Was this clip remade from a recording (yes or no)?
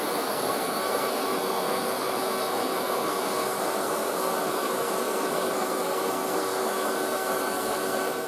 yes